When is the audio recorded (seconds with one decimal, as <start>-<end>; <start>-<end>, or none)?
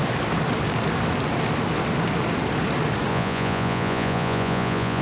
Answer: 0.0-3.1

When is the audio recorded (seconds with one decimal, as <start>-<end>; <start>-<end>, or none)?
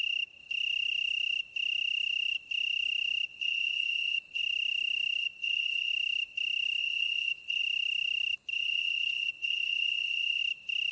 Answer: 0.0-3.3; 4.4-5.2; 5.9-6.8; 7.6-8.5; 10.4-10.9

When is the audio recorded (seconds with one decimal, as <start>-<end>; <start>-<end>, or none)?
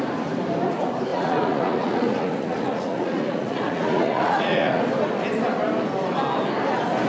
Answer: 0.0-1.1; 4.8-7.1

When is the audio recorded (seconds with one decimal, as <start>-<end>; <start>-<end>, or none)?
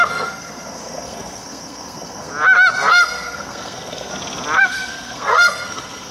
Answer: 2.3-2.9; 4.1-4.6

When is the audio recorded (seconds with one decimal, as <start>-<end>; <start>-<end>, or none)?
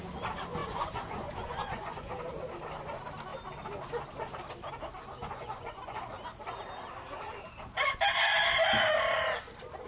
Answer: 0.0-0.6; 2.1-5.2; 6.0-9.9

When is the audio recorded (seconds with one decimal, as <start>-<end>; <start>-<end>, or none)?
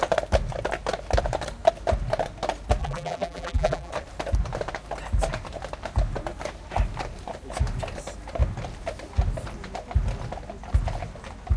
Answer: 0.0-2.8; 3.9-11.6